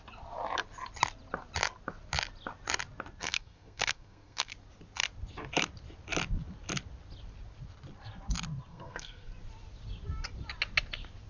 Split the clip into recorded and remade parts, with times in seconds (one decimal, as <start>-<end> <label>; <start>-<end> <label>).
0.0-3.2 recorded; 3.2-4.5 remade; 4.5-8.7 recorded; 8.7-9.3 remade; 9.3-11.3 recorded